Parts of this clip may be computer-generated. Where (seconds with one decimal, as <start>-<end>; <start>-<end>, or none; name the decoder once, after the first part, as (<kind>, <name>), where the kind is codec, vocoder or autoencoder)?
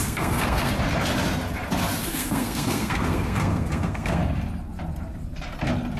0.0-0.7 (codec, SNAC); 2.1-4.2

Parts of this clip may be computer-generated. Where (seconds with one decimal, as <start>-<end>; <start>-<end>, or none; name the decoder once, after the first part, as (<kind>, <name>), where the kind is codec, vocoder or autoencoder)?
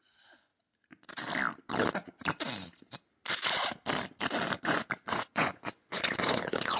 0.0-0.5 (vocoder, Vocos); 4.6-6.8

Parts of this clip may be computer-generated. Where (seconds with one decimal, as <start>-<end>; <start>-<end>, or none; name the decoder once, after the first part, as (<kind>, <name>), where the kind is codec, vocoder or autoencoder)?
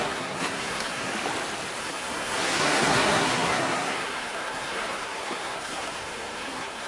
0.0-1.1 (codec, SNAC); 1.8-6.9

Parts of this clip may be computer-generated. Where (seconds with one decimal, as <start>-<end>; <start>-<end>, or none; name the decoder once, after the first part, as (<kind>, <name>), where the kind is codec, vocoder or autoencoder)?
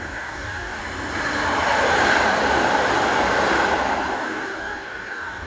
0.0-0.8 (codec, DAC); 4.1-5.5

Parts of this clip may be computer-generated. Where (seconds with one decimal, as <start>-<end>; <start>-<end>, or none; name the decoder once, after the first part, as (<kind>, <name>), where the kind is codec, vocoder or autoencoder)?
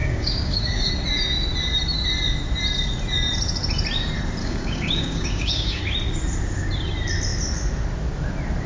0.0-0.9 (codec, DAC); 4.4-5.8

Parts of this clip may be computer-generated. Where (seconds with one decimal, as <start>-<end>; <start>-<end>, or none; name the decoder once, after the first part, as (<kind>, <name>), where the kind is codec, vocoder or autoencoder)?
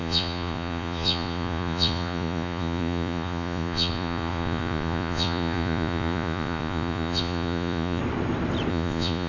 0.0-8.0 (vocoder, Vocos); 8.7-9.3